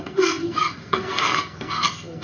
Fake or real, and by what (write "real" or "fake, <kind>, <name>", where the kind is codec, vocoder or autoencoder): fake, codec, SNAC